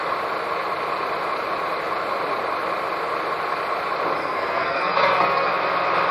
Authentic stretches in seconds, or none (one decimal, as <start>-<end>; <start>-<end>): 0.0-4.2; 5.5-6.1